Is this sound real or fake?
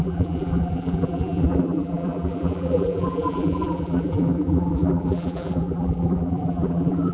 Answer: fake